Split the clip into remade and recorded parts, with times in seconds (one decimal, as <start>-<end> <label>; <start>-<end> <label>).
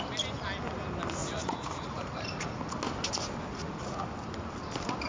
0.0-1.2 recorded; 1.2-2.7 remade; 2.7-3.5 recorded; 3.5-4.0 remade; 4.0-5.1 recorded